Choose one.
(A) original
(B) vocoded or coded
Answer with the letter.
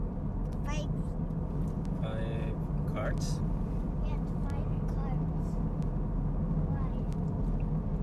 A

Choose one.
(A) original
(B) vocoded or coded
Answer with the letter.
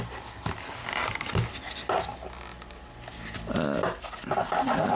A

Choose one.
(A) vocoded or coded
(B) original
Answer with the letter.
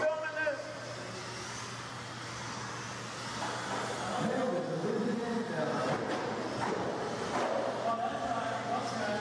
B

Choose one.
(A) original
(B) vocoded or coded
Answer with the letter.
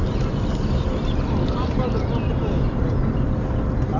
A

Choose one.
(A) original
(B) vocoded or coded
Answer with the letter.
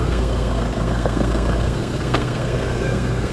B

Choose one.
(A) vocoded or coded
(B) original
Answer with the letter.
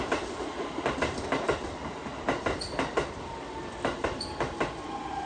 B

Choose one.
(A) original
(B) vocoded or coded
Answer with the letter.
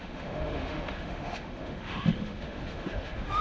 B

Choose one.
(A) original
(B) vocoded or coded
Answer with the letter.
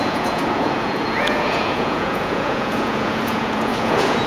B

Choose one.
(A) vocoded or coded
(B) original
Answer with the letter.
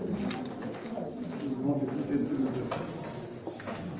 B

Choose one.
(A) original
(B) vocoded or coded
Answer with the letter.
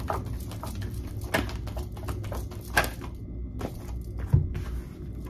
A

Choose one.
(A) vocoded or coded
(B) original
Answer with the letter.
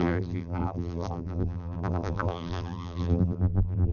A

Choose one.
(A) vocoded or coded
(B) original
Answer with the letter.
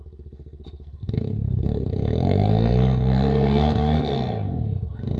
A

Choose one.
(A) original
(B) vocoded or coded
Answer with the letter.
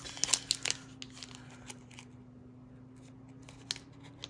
A